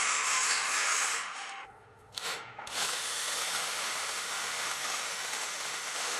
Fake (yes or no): yes